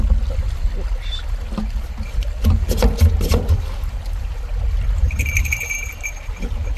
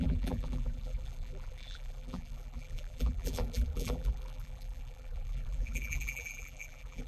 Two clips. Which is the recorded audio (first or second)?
first